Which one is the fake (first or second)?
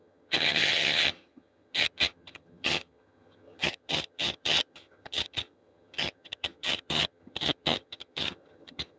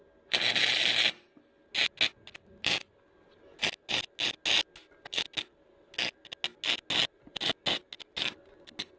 first